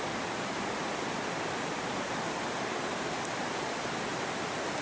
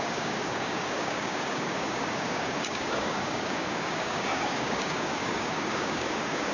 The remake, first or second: second